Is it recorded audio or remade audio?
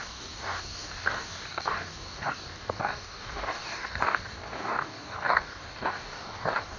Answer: remade